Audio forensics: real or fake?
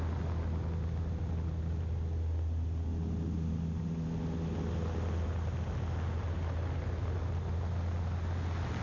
real